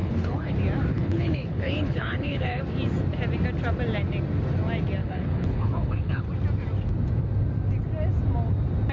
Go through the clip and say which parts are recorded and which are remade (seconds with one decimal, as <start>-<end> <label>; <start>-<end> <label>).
0.0-0.5 remade; 0.5-0.9 recorded; 0.9-2.6 remade; 2.6-5.0 recorded; 5.0-6.2 remade; 6.2-8.9 recorded